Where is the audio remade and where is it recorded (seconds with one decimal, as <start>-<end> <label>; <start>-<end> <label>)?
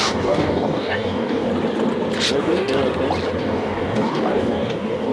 0.0-1.5 remade; 1.5-2.4 recorded; 2.4-2.8 remade; 2.8-3.4 recorded; 3.4-5.1 remade